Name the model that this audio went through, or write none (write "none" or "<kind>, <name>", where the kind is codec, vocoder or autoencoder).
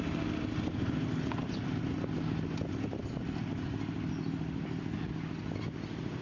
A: none